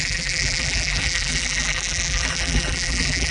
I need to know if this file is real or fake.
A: fake